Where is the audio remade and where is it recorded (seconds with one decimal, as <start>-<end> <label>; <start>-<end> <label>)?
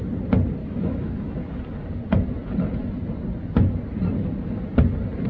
0.0-0.6 recorded; 0.6-1.6 remade; 1.6-5.3 recorded